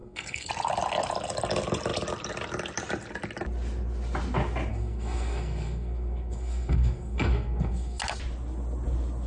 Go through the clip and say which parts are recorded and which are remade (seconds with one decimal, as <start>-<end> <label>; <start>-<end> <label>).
0.0-0.5 remade; 0.5-4.7 recorded; 4.7-8.0 remade; 8.0-9.3 recorded